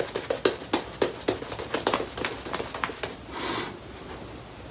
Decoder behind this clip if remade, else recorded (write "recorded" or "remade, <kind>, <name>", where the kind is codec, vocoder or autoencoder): recorded